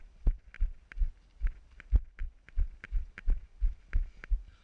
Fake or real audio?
real